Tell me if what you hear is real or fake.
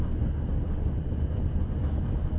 real